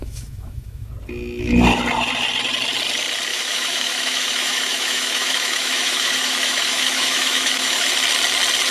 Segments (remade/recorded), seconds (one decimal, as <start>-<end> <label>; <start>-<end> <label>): 0.0-0.9 remade; 0.9-3.3 recorded; 3.3-7.9 remade; 7.9-8.7 recorded